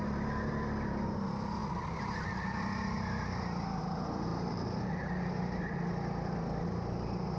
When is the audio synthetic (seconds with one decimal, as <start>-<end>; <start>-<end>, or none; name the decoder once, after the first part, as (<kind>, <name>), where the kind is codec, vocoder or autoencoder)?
4.3-4.9 (vocoder, BigVGAN v2)